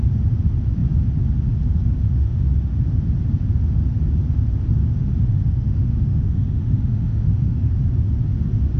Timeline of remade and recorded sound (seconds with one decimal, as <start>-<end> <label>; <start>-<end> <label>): 0.0-2.0 recorded; 2.0-2.5 remade; 2.5-5.0 recorded; 5.0-7.7 remade; 7.7-8.8 recorded